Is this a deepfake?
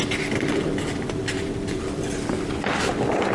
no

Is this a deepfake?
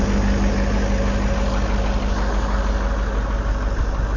no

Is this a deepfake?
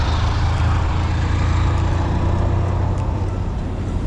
no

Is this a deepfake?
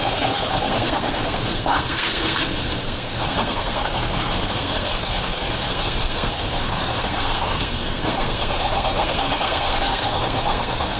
yes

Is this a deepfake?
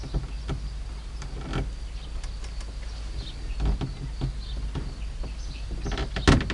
no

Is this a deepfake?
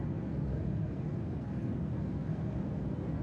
yes